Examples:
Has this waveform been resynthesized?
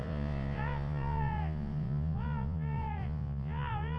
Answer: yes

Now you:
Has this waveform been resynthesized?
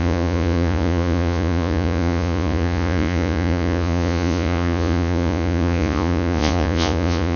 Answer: yes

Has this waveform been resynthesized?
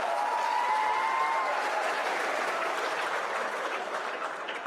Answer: yes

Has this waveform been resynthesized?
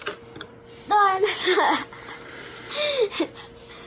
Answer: no